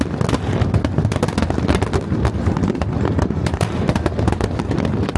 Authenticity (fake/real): real